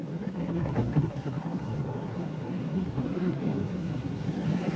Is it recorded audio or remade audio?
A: remade